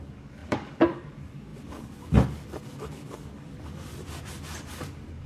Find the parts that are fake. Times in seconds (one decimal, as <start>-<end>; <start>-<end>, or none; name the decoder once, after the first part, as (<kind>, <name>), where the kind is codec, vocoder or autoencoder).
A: 0.0-3.9 (codec, DAC); 4.7-5.3